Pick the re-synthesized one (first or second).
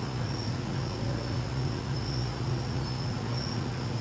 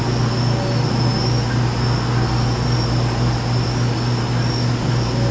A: first